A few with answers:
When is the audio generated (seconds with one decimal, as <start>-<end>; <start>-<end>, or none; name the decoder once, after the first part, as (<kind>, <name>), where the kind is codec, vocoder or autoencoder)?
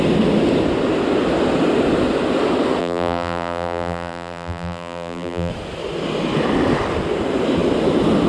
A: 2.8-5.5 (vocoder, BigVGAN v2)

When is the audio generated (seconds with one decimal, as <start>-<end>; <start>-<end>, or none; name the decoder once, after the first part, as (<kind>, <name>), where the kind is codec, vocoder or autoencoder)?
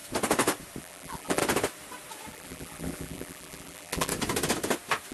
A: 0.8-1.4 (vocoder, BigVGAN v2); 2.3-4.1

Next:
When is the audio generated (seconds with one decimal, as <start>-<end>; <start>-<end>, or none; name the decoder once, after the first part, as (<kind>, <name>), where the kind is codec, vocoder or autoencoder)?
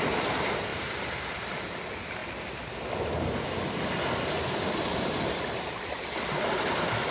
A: 0.7-1.3 (vocoder, BigVGAN v2)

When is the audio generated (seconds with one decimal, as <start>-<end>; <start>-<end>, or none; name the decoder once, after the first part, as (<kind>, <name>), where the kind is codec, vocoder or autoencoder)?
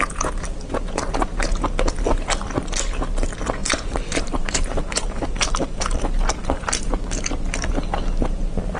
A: 3.6-5.8 (vocoder, BigVGAN v2); 6.4-6.9